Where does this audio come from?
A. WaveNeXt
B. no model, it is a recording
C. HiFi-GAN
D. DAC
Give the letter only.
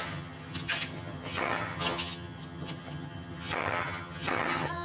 C